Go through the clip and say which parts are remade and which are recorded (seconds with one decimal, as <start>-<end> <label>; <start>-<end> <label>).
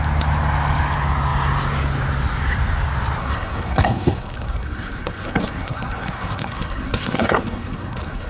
0.0-3.2 recorded; 3.2-8.3 remade